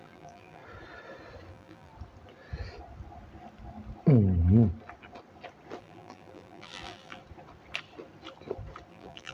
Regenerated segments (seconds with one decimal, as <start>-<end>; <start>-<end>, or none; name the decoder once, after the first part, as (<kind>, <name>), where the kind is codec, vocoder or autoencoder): 0.0-0.6 (vocoder, BigVGAN v2); 1.5-1.9; 5.8-7.2; 8.9-9.3